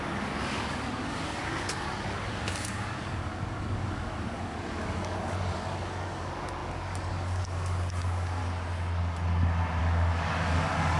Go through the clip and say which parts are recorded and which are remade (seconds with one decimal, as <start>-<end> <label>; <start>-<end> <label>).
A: 0.0-8.4 remade; 8.4-9.8 recorded; 9.8-11.0 remade